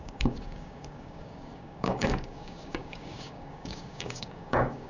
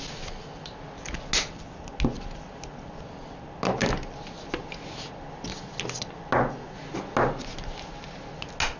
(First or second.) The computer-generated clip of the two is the first